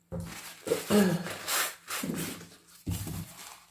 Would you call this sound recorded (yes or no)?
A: yes